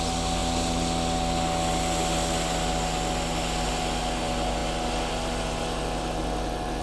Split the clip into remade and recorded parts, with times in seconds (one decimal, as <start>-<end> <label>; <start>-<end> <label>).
0.0-6.8 recorded